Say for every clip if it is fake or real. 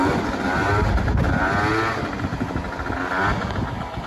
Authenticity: real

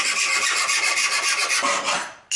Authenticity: real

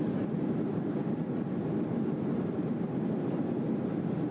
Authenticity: real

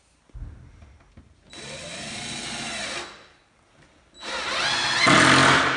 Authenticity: real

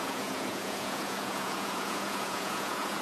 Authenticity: fake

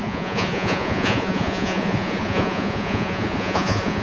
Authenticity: fake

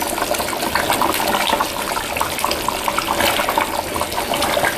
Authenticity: real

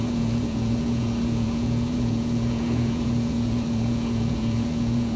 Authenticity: fake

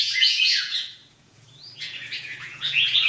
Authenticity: fake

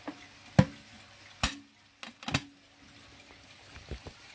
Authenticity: real